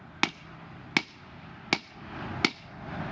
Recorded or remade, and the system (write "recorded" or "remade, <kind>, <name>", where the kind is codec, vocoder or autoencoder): recorded